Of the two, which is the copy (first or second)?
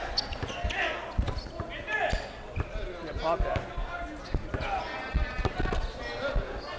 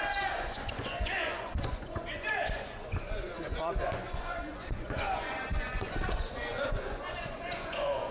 second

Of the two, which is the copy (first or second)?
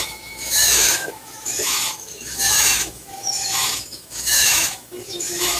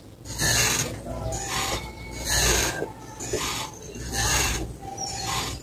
first